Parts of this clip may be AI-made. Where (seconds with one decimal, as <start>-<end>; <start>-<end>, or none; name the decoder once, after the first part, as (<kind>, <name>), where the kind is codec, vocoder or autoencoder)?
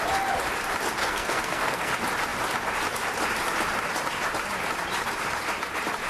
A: 1.0-1.9 (codec, SNAC)